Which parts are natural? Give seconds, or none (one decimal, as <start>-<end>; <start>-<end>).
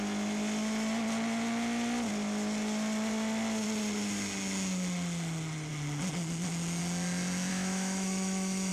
0.0-7.5